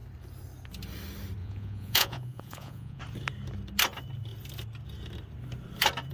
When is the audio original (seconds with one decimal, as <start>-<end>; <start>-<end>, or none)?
0.0-1.4; 3.0-6.1